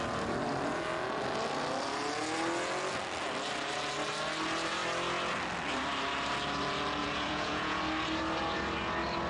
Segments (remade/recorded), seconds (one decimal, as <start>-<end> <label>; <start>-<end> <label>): 0.0-7.0 recorded; 7.0-7.8 remade; 7.8-9.3 recorded